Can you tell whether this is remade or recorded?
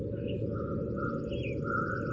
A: recorded